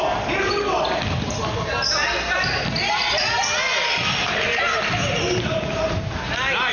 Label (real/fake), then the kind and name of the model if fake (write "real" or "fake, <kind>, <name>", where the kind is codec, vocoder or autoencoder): real